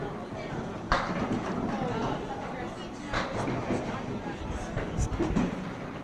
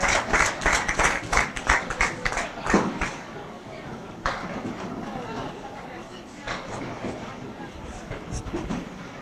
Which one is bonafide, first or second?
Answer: first